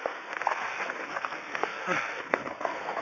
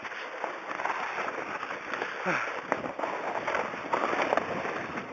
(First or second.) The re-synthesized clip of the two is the first